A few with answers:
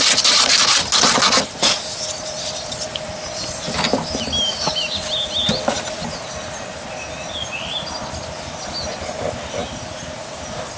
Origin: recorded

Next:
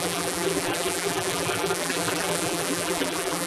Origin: remade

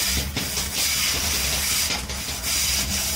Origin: recorded